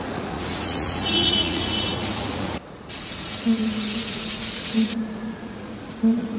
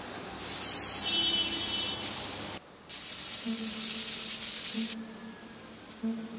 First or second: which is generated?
first